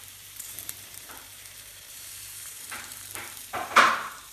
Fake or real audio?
fake